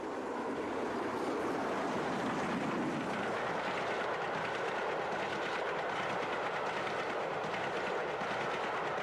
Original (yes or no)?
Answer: yes